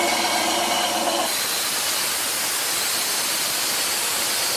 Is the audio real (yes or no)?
yes